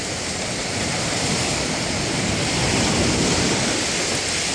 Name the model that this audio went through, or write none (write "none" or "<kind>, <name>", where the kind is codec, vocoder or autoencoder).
none